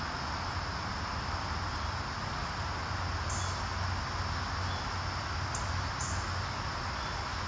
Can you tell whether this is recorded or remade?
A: recorded